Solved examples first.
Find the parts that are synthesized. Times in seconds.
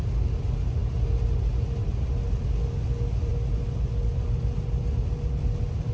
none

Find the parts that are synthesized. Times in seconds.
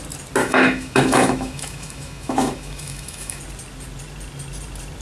0.4-3.4 (autoencoder, DAC-VAE)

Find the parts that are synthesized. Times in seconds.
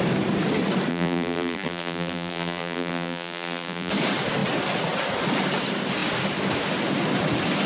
0.9-3.9 (vocoder, BigVGAN v2)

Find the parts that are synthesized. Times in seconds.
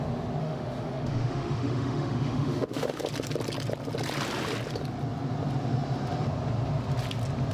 0.4-3.0 (autoencoder, DAC-VAE)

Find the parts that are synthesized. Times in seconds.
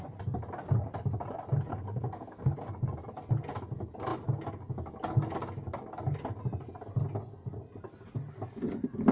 1.7-2.5 (codec, SNAC)